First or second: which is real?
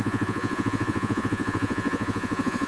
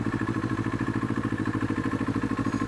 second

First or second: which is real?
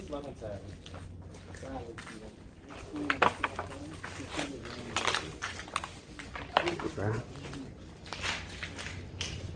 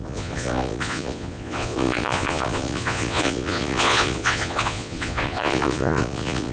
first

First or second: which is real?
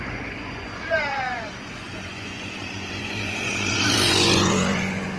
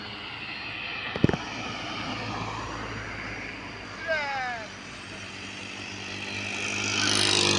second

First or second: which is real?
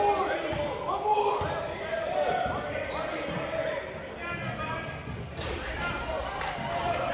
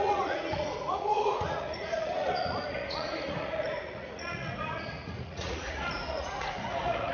first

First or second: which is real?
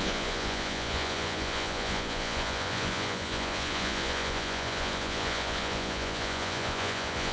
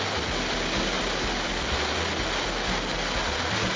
second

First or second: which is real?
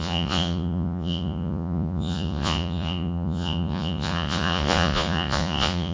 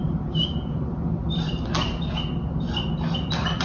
second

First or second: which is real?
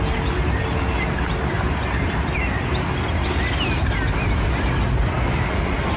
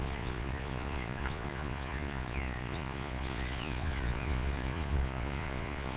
first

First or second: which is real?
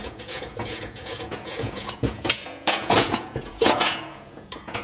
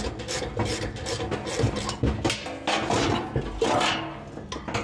second